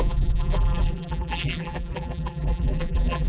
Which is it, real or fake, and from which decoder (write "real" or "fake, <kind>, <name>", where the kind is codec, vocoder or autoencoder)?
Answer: fake, vocoder, BigVGAN v2